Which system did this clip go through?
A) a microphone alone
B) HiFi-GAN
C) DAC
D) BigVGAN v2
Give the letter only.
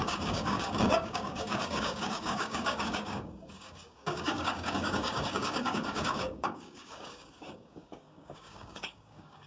C